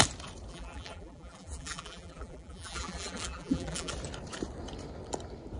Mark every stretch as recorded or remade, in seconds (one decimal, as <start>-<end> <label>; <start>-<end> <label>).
0.0-0.5 recorded; 0.5-3.9 remade; 3.9-5.6 recorded